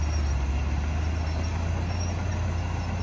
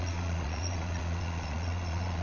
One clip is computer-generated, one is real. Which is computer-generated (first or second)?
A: second